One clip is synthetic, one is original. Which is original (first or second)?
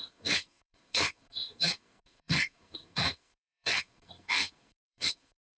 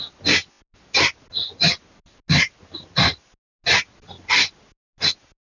second